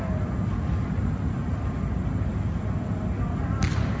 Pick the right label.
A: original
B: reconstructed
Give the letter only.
A